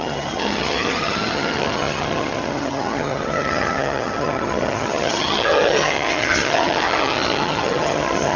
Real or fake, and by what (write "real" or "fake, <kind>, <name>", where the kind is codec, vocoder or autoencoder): fake, vocoder, HiFi-GAN